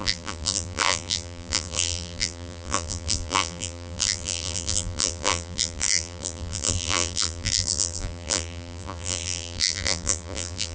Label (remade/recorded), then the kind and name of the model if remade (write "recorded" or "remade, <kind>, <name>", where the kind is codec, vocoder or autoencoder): remade, vocoder, BigVGAN v2